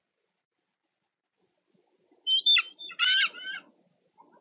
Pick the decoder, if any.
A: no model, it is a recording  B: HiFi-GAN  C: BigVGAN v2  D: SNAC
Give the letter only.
A